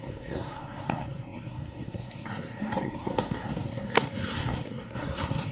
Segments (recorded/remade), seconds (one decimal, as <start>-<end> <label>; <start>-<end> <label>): 0.0-5.5 remade